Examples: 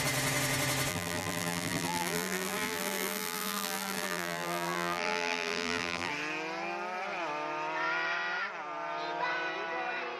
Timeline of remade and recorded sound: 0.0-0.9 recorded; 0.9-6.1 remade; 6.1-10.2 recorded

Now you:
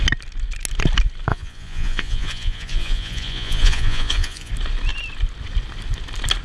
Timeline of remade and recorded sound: 0.0-1.3 recorded; 1.3-4.5 remade; 4.5-6.4 recorded

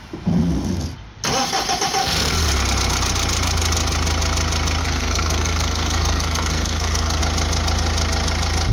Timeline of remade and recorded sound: 0.0-2.0 recorded; 2.0-2.6 remade; 2.6-4.8 recorded; 4.8-7.2 remade; 7.2-8.7 recorded

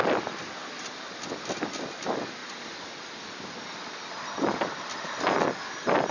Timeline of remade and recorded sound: 0.0-6.1 recorded

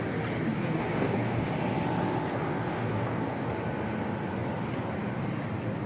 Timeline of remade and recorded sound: 0.0-0.5 recorded; 0.5-1.5 remade; 1.5-2.5 recorded; 2.5-3.5 remade; 3.5-5.9 recorded

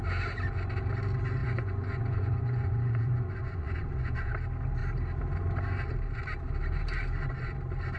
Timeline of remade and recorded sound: 0.0-1.4 recorded; 1.4-4.3 remade; 4.3-8.0 recorded

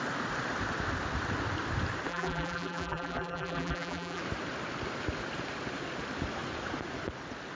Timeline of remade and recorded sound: 0.0-2.1 recorded; 2.1-4.2 remade; 4.2-7.5 recorded

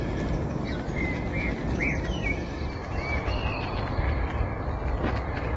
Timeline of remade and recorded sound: 0.0-2.8 recorded; 2.8-4.0 remade; 4.0-5.6 recorded